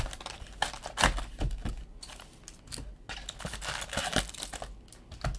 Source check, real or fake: real